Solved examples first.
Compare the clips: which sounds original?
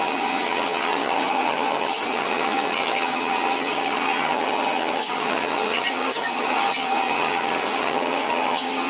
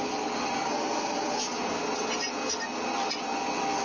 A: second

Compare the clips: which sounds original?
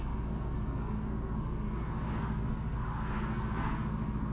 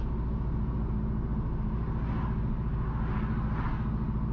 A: second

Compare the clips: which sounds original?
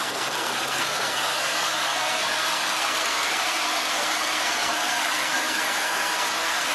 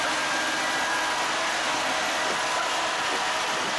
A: second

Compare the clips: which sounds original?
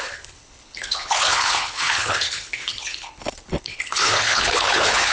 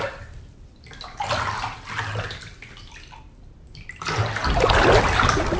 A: second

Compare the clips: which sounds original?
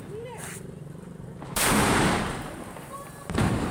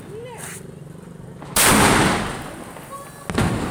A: second